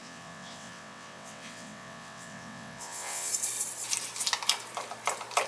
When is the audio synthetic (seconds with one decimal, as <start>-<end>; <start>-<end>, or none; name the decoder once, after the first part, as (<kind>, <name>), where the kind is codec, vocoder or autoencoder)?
0.0-3.3 (vocoder, WaveNeXt)